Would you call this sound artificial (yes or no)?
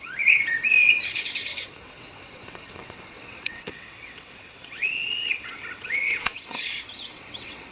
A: yes